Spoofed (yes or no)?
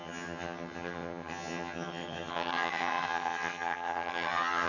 yes